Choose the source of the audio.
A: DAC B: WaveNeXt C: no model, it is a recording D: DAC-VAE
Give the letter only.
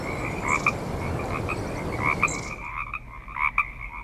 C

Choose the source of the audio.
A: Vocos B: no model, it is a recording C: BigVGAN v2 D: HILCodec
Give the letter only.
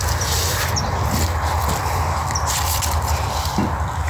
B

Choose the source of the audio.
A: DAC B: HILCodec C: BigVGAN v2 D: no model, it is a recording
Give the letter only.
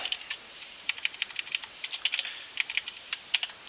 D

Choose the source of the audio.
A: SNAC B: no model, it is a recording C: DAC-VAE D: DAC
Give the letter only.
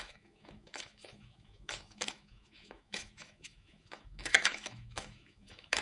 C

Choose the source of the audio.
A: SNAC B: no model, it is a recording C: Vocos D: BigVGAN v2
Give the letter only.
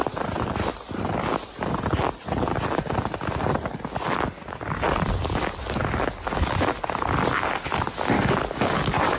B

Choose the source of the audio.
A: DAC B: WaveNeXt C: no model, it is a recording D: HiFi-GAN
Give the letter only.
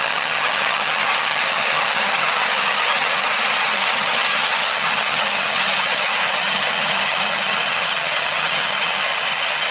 D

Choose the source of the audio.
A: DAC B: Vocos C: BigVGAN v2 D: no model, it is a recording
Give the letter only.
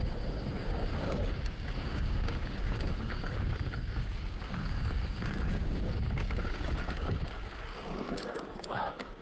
A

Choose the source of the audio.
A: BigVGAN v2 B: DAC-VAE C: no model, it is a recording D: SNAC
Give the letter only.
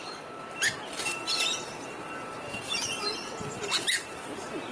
C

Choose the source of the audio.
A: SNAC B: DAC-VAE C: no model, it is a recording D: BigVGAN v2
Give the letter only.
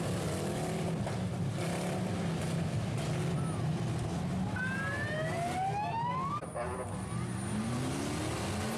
C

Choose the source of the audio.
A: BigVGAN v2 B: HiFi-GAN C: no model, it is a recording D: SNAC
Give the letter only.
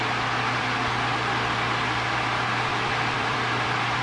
A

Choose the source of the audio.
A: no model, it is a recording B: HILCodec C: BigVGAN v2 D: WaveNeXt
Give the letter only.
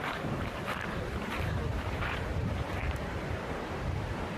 C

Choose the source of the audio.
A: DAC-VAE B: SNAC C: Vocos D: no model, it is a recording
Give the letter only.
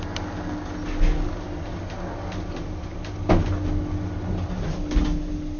D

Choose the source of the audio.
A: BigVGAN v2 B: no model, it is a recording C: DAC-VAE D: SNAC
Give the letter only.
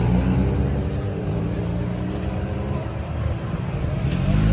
B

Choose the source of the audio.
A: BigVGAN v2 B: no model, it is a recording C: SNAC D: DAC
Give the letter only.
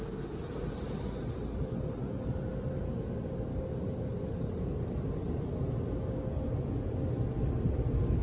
B